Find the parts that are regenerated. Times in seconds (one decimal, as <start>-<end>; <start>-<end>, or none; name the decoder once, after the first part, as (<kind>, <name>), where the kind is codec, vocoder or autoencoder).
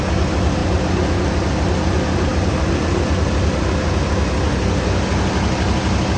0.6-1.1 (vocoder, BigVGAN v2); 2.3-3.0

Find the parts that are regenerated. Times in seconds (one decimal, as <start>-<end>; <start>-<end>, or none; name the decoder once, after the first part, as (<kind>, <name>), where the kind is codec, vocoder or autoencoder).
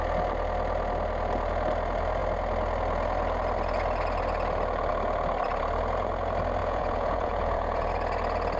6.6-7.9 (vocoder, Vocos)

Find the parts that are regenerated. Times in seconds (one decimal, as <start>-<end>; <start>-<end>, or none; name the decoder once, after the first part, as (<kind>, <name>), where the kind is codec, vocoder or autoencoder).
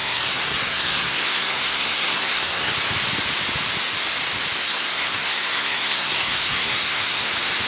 0.0-2.7 (codec, SNAC); 4.6-7.3